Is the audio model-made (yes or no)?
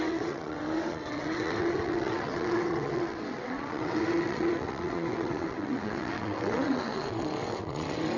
yes